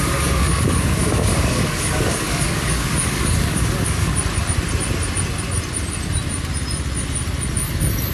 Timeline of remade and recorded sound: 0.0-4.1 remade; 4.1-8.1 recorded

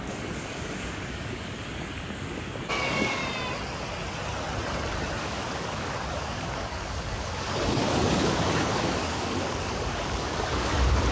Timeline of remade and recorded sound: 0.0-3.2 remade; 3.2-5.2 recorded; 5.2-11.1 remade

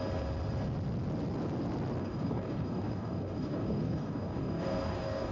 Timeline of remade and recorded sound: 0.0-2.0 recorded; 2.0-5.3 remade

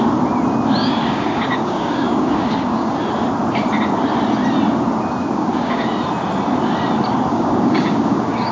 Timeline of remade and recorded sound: 0.0-0.8 recorded; 0.8-3.0 remade; 3.0-5.2 recorded; 5.2-5.8 remade; 5.8-7.3 recorded; 7.3-8.5 remade

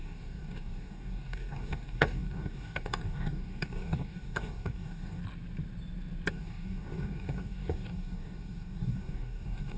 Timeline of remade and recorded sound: 0.0-5.2 remade; 5.2-6.3 recorded; 6.3-9.8 remade

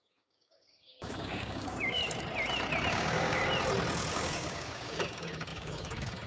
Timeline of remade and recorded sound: 0.0-2.0 remade; 2.0-2.9 recorded; 2.9-3.4 remade; 3.4-4.1 recorded; 4.1-6.3 remade

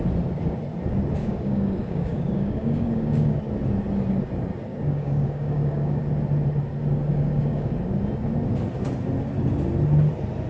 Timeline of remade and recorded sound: 0.0-1.2 recorded; 1.2-3.4 remade; 3.4-4.7 recorded; 4.7-6.0 remade; 6.0-7.1 recorded; 7.1-7.7 remade; 7.7-10.5 recorded

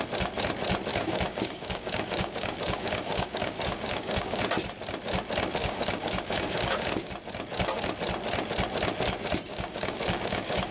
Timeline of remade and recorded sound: 0.0-0.9 recorded; 0.9-4.4 remade; 4.4-5.6 recorded; 5.6-7.1 remade; 7.1-9.5 recorded; 9.5-10.7 remade